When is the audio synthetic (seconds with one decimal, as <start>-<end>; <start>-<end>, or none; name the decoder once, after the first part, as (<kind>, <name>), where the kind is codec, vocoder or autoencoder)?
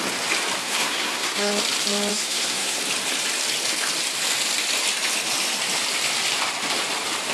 0.6-1.5 (codec, SNAC); 2.1-2.8